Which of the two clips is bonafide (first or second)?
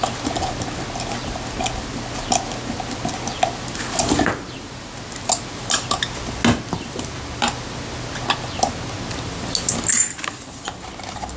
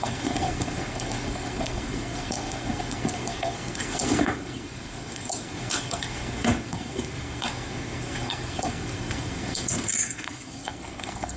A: first